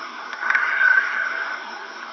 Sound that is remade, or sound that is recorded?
remade